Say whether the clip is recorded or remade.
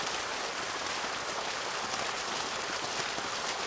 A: recorded